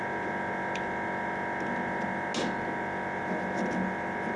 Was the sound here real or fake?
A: real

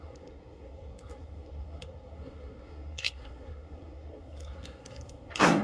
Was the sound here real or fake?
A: fake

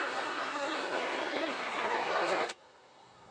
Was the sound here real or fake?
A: fake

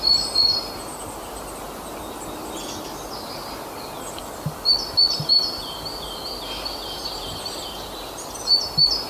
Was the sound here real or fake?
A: real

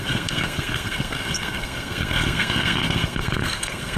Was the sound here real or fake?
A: fake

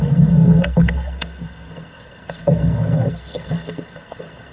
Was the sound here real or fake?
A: fake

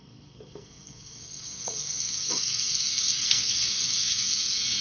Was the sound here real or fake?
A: fake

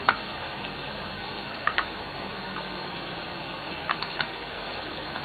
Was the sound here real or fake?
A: fake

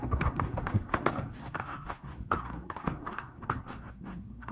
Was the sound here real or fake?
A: fake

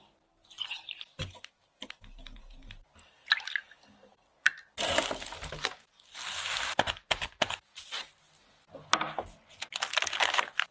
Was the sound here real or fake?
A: real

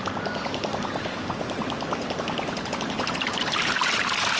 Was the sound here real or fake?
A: real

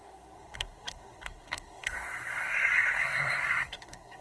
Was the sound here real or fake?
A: fake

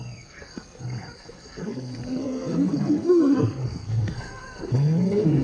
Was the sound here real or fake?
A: fake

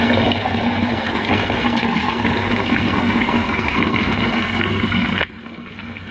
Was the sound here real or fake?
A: fake